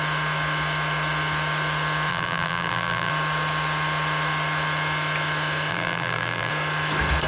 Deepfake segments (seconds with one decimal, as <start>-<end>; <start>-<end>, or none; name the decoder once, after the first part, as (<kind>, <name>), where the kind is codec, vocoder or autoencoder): 2.1-3.1 (vocoder, BigVGAN v2); 5.7-6.5

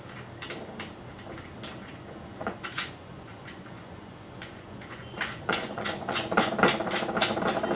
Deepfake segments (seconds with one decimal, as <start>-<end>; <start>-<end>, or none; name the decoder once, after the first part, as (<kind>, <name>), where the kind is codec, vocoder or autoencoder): 1.8-6.5 (vocoder, Vocos)

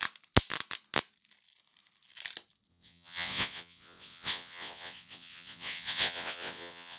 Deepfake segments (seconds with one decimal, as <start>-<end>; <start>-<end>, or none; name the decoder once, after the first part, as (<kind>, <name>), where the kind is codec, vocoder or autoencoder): 2.7-7.0 (vocoder, WaveNeXt)

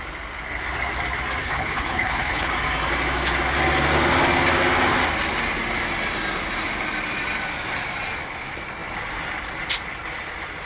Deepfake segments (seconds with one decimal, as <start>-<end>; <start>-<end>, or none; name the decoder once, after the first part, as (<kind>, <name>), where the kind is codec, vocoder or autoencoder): 1.4-2.5 (codec, HILCodec)

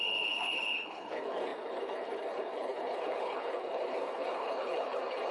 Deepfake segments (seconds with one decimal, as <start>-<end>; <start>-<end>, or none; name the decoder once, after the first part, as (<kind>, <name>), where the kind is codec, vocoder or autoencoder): 0.0-5.3 (codec, HILCodec)